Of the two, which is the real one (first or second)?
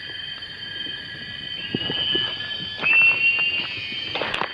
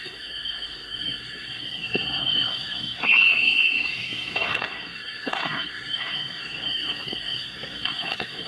first